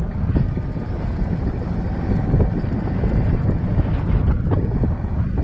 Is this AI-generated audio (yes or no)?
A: no